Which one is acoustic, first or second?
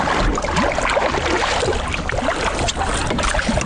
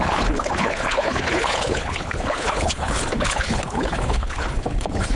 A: first